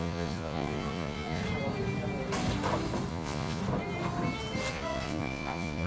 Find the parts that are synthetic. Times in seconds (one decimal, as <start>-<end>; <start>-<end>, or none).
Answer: 0.0-1.4; 3.1-3.6; 4.7-5.9